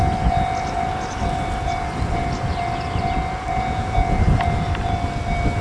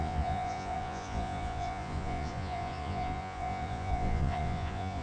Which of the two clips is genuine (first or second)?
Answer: first